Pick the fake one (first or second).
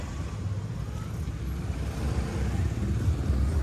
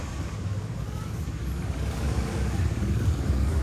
second